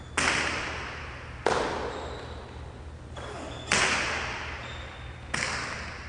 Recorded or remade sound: recorded